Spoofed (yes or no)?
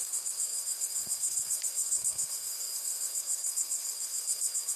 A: yes